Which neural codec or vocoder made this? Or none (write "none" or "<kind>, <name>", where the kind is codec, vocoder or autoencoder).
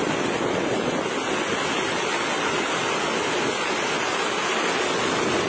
none